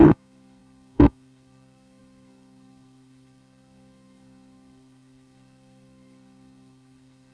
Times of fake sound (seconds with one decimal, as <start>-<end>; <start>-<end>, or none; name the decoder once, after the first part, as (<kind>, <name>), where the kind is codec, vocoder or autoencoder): 0.0-7.3 (codec, SNAC)